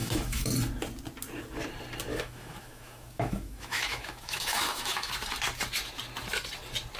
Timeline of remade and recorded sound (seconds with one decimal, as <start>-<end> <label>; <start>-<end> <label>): 0.0-0.5 remade; 0.5-2.1 recorded; 2.1-5.1 remade; 5.1-7.0 recorded